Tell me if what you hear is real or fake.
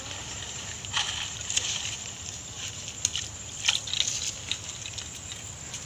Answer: real